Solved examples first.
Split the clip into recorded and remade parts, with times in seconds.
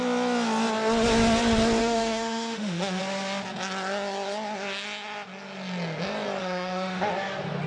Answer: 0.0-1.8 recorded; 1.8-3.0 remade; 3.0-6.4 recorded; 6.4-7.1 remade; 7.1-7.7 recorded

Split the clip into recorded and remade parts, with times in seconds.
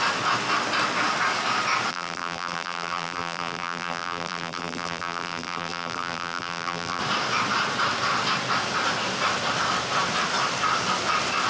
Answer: 0.0-1.9 recorded; 1.9-7.0 remade; 7.0-11.5 recorded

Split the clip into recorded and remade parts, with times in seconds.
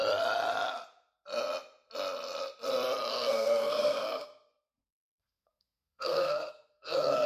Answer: 0.0-3.1 recorded; 3.1-7.3 remade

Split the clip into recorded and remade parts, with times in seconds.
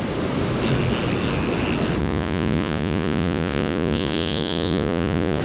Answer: 0.0-2.0 recorded; 2.0-5.4 remade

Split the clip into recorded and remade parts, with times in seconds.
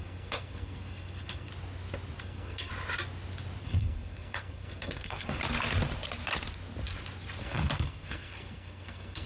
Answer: 0.0-1.5 remade; 1.5-2.2 recorded; 2.2-2.7 remade; 2.7-3.6 recorded; 3.6-5.4 remade; 5.4-7.4 recorded; 7.4-9.3 remade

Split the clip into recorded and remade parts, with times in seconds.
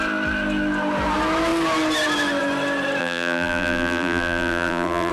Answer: 0.0-3.0 recorded; 3.0-5.1 remade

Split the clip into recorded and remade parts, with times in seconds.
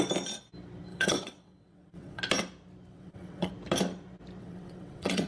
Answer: 0.0-0.9 recorded; 0.9-2.2 remade; 2.2-2.9 recorded; 2.9-3.5 remade; 3.5-4.4 recorded; 4.4-5.3 remade